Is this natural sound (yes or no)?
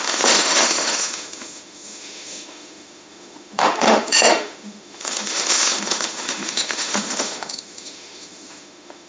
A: no